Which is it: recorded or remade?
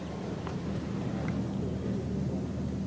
recorded